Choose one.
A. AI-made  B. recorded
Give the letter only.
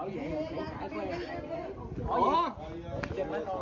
B